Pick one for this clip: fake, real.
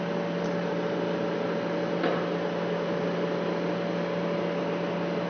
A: real